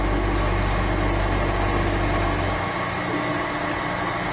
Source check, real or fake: real